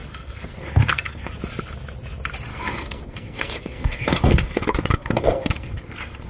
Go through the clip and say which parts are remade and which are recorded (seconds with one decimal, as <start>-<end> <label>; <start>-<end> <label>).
0.0-1.3 remade; 1.3-2.5 recorded; 2.5-6.3 remade